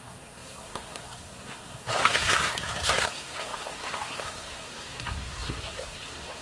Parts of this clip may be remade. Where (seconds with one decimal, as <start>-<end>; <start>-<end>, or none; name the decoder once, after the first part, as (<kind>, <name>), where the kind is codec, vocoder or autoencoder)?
0.0-6.4 (codec, SNAC)